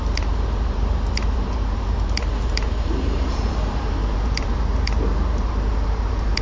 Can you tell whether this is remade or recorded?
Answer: remade